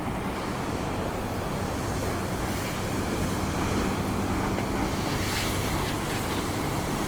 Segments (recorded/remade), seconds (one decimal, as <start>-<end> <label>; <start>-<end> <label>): 0.0-7.1 recorded